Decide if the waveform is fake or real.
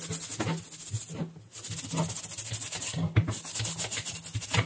real